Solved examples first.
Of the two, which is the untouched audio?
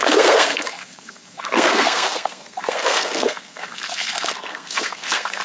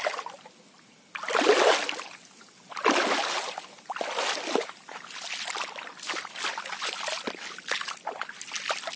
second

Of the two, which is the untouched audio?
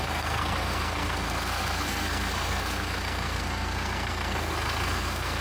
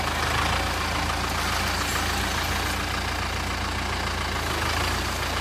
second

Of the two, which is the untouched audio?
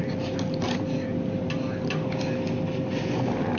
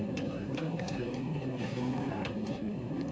first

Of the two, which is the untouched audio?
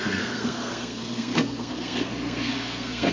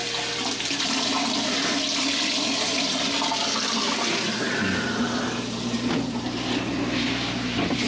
second